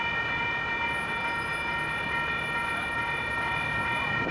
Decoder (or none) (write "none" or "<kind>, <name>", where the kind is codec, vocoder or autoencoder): none